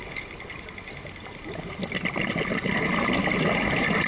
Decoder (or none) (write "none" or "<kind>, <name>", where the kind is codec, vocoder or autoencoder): none